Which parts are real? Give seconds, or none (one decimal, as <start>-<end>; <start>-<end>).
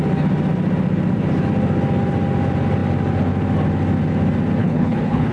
0.0-4.6